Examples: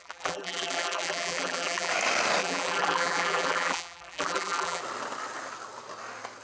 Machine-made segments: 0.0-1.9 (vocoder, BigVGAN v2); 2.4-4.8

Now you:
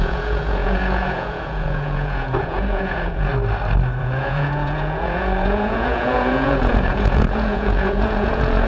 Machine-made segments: 0.0-3.3 (vocoder, Vocos); 4.0-8.7

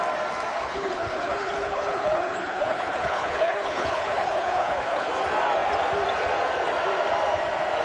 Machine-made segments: 0.5-5.1 (codec, HILCodec)

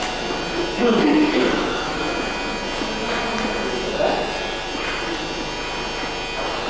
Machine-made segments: 1.1-2.0 (autoencoder, DAC-VAE)

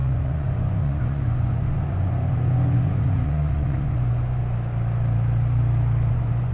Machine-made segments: 0.0-4.4 (vocoder, Vocos); 6.1-6.5